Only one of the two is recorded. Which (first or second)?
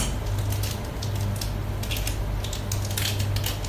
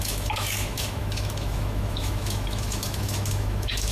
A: first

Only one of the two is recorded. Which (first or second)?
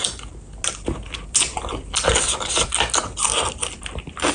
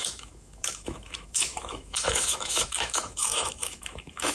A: first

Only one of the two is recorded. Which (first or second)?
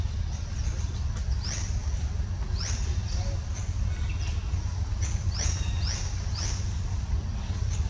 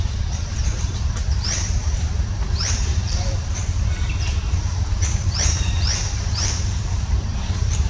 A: first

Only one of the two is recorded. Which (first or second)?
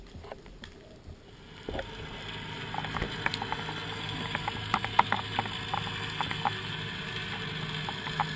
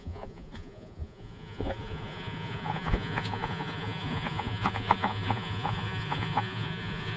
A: first